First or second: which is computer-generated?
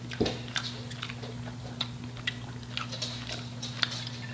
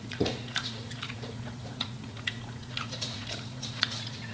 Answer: second